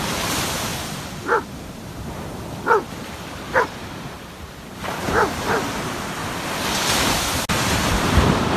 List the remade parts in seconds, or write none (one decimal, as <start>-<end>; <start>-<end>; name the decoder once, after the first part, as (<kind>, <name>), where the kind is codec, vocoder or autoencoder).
0.0-0.7 (vocoder, BigVGAN v2); 3.6-6.2; 6.9-8.6